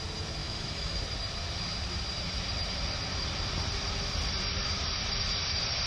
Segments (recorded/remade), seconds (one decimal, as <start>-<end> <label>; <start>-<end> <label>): 0.0-0.4 recorded; 0.4-1.0 remade; 1.0-5.9 recorded